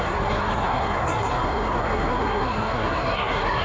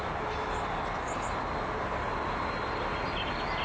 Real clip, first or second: second